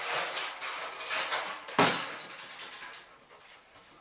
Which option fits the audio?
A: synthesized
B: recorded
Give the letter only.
B